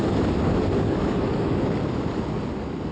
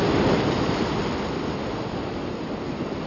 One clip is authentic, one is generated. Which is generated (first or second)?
first